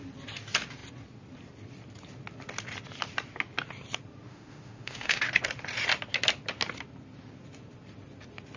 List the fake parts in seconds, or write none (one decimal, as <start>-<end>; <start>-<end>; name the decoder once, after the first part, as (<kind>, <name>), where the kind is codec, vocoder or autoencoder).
4.3-5.2 (autoencoder, DAC-VAE)